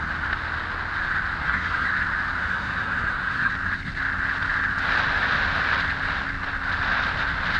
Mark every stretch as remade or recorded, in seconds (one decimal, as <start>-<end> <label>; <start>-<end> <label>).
0.0-1.4 recorded; 1.4-1.9 remade; 1.9-2.4 recorded; 2.4-3.5 remade; 3.5-7.6 recorded